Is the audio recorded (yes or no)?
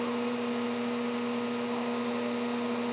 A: yes